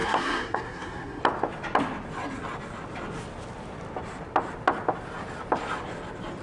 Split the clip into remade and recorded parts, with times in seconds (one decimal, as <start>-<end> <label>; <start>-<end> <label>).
0.0-1.2 remade; 1.2-6.4 recorded